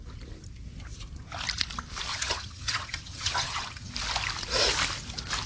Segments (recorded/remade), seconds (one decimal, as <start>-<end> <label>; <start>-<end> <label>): 0.0-2.1 recorded; 2.1-3.9 remade; 3.9-5.5 recorded